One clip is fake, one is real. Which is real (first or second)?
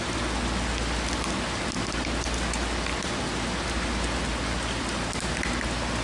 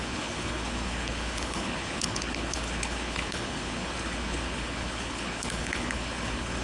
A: first